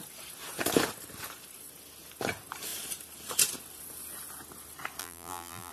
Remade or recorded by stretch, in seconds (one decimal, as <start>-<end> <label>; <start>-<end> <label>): 0.0-5.0 recorded; 5.0-5.7 remade